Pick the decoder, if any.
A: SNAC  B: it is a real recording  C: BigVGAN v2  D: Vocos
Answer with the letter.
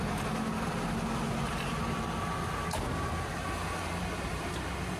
B